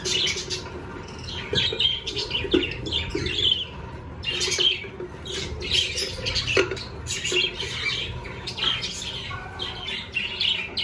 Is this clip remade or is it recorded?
recorded